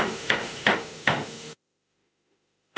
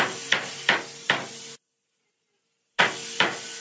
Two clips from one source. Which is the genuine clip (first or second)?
second